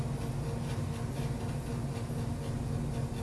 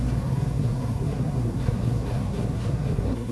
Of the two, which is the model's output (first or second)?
second